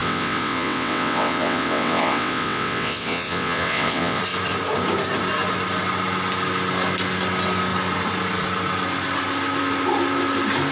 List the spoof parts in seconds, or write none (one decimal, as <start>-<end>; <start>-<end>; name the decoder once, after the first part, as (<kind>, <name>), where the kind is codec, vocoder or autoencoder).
0.0-4.2 (vocoder, WaveNeXt)